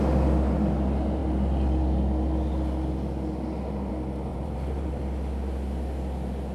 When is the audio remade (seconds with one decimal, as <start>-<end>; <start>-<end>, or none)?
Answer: 4.3-5.0